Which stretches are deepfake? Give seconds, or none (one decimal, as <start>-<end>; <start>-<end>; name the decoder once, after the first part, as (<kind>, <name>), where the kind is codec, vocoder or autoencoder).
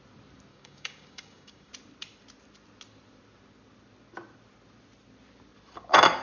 0.5-1.7 (codec, DAC)